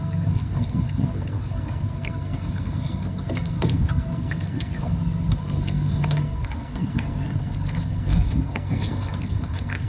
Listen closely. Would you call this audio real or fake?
fake